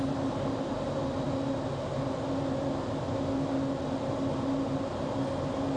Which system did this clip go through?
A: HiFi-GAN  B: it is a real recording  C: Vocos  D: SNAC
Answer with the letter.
B